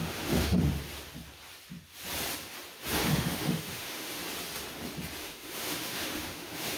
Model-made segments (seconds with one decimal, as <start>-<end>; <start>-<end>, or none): 0.0-0.6; 3.1-4.2; 5.2-6.8